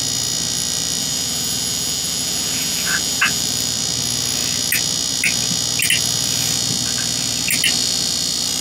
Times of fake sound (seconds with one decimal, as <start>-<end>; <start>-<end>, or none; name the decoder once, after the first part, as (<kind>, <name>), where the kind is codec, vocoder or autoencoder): 1.0-3.4 (vocoder, BigVGAN v2)